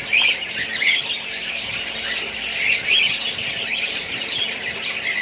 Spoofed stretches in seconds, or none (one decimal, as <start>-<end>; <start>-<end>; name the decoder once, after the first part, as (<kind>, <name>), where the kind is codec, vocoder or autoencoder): 0.7-2.3 (vocoder, BigVGAN v2); 3.7-4.6